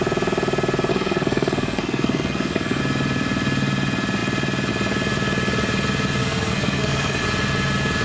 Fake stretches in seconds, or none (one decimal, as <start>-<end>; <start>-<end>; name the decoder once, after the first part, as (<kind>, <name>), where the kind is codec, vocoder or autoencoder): 0.9-2.8 (codec, SNAC); 6.2-7.2